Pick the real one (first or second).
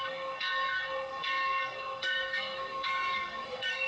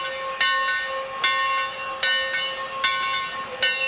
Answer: second